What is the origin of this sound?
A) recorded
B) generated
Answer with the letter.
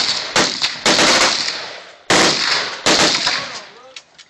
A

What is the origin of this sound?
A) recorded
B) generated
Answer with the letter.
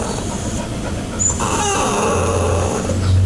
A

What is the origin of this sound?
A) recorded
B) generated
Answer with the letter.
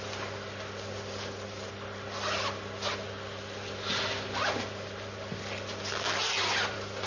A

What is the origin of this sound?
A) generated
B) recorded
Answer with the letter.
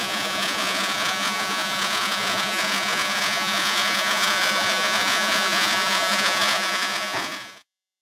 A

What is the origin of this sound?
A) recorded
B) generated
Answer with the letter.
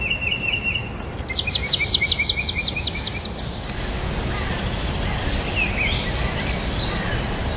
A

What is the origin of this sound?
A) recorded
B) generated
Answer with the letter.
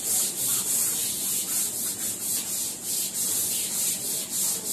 A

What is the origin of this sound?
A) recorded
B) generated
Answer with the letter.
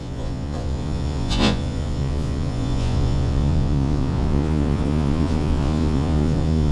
B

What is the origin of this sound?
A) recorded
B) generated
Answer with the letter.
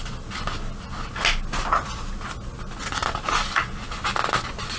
A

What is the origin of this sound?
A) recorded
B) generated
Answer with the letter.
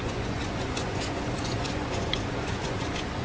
B